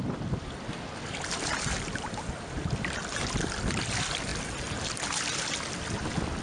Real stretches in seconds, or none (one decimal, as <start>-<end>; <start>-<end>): 0.0-6.4